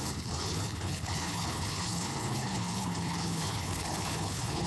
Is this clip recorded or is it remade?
remade